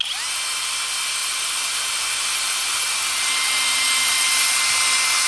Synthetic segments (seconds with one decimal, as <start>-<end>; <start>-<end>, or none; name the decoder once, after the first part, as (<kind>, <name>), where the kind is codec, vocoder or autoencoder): 1.2-1.9 (vocoder, BigVGAN v2); 2.3-4.6